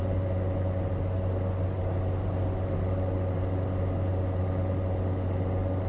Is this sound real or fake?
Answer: real